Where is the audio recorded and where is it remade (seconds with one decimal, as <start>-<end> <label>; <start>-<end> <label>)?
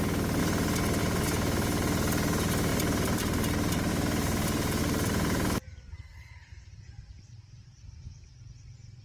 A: 0.0-2.7 recorded; 2.7-3.9 remade; 3.9-4.8 recorded; 4.8-7.3 remade; 7.3-9.0 recorded